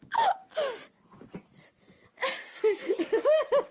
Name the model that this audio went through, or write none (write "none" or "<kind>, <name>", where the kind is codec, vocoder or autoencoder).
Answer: none